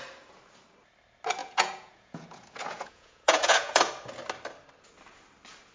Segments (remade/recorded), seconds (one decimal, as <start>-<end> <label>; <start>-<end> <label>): 0.0-1.4 recorded; 1.4-3.9 remade; 3.9-5.7 recorded